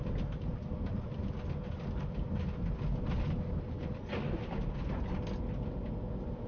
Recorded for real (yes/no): yes